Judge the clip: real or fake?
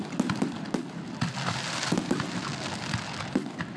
real